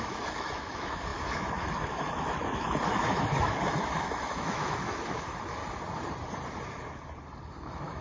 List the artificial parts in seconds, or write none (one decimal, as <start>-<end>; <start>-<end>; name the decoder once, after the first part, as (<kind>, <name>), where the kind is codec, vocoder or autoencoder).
0.0-5.6 (autoencoder, DAC-VAE); 7.6-8.0